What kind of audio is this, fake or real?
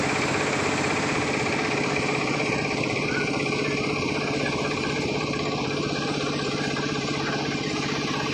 fake